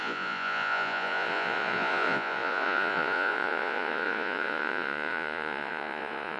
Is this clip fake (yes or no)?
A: yes